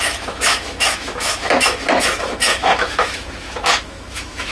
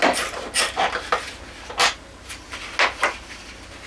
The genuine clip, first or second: second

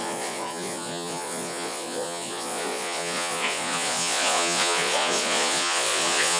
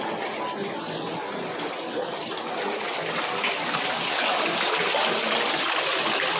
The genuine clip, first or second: second